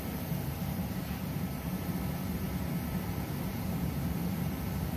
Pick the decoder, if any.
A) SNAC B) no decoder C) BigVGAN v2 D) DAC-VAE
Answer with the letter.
C